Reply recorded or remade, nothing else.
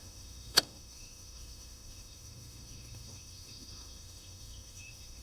remade